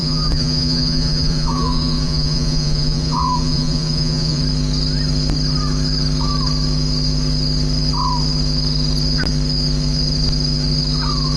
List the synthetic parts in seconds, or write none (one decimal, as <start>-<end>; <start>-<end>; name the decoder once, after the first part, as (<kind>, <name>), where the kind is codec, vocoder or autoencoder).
0.0-4.4 (vocoder, Vocos)